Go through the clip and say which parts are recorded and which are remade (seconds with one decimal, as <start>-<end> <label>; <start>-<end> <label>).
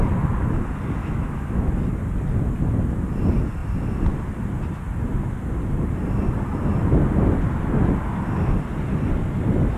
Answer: 0.0-1.0 recorded; 1.0-1.7 remade; 1.7-9.8 recorded